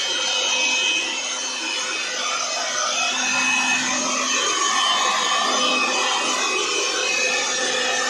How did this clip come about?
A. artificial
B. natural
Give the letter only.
B